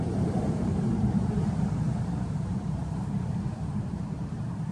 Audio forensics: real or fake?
fake